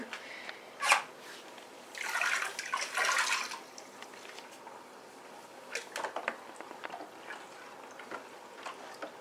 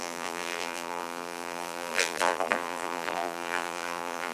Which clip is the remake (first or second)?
second